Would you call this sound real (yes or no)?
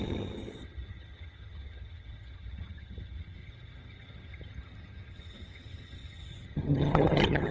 no